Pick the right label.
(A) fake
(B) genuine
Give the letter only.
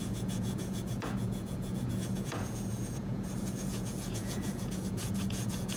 A